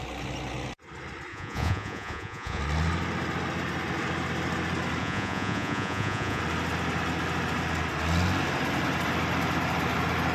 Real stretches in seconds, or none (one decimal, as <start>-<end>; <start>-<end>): 0.0-1.3; 2.6-5.0; 6.4-10.3

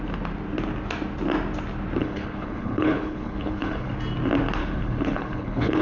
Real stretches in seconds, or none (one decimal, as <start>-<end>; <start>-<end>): 0.0-2.0; 3.9-4.6

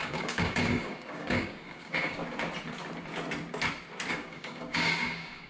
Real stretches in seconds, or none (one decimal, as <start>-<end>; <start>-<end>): 2.2-4.1

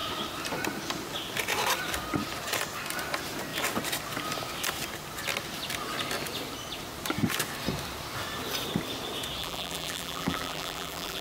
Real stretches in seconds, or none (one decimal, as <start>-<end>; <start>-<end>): 0.0-9.4